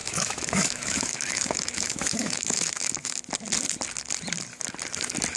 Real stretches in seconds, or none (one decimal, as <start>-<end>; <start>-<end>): 3.2-5.4